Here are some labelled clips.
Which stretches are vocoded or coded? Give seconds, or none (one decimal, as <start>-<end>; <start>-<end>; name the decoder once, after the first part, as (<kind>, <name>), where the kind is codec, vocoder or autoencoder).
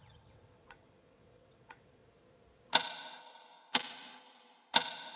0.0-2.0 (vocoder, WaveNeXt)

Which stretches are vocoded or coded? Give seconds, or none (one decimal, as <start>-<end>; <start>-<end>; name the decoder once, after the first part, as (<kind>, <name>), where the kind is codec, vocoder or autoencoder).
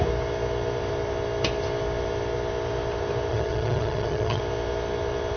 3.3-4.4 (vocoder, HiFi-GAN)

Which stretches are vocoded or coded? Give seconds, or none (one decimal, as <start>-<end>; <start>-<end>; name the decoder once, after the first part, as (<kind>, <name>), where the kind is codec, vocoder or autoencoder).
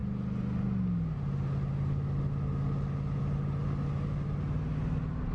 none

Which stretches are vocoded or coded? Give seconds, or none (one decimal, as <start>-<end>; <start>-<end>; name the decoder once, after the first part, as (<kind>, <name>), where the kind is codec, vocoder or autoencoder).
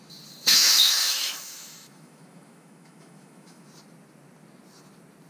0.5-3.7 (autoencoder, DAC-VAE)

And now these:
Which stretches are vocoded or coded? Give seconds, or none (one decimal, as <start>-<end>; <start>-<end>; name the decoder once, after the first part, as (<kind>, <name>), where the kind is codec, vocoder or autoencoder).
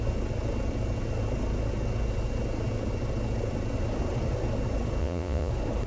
5.0-5.5 (vocoder, Vocos)